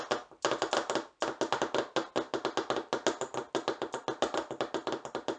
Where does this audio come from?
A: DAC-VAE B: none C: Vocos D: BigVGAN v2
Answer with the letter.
B